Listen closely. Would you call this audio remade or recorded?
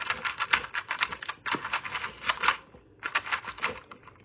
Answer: recorded